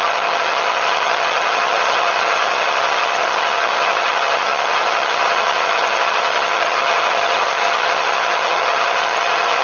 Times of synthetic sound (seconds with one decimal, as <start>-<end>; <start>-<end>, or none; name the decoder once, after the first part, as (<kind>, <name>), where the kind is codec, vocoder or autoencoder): 0.0-9.6 (vocoder, HiFi-GAN)